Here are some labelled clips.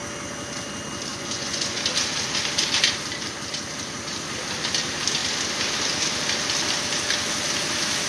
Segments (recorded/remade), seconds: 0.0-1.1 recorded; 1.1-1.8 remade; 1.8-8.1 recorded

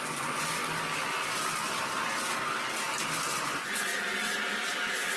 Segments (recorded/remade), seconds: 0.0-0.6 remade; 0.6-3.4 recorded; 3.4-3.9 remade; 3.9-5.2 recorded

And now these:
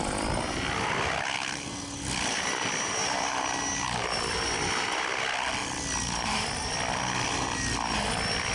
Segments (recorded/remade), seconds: 0.0-8.5 recorded